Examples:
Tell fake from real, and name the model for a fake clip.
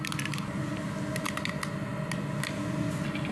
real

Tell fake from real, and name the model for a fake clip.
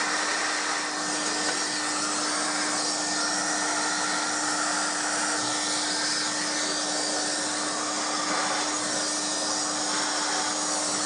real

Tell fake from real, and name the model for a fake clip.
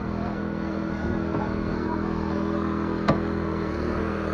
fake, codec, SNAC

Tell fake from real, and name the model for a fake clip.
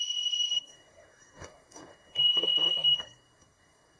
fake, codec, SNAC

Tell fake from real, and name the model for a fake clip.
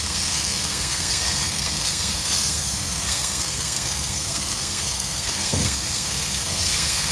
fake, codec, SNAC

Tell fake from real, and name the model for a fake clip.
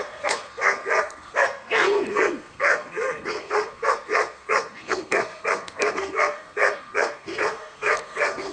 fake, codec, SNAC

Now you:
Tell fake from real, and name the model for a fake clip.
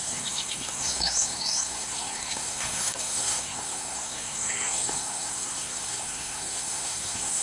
fake, codec, SNAC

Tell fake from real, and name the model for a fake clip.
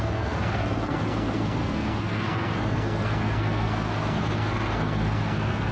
fake, codec, SNAC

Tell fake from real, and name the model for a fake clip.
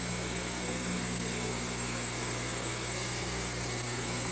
fake, codec, SNAC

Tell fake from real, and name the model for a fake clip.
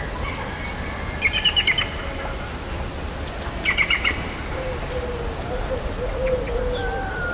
real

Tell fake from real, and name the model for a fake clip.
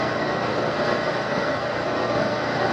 fake, codec, SNAC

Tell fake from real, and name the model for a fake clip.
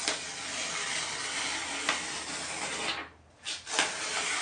real